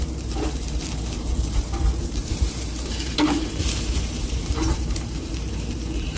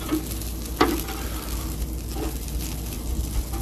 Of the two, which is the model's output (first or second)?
first